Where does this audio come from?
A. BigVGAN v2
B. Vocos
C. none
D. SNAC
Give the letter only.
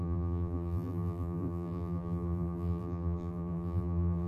A